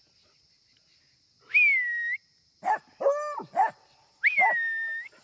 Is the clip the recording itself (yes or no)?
yes